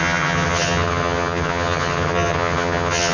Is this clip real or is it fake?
fake